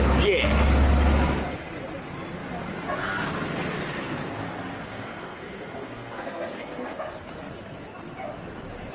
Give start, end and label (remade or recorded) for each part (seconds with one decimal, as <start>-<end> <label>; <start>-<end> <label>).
0.0-4.9 recorded; 4.9-7.0 remade; 7.0-8.9 recorded